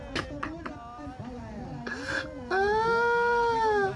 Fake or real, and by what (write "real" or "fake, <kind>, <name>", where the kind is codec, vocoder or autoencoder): real